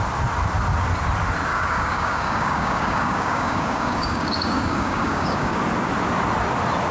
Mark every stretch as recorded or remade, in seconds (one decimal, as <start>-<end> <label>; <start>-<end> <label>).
0.0-1.5 recorded; 1.5-5.6 remade; 5.6-6.9 recorded